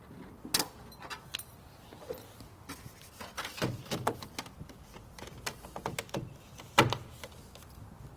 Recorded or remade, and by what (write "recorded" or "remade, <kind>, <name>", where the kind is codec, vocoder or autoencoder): recorded